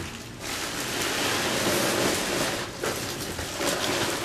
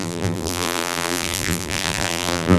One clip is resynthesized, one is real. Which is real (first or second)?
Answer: first